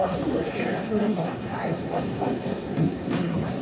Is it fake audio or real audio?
fake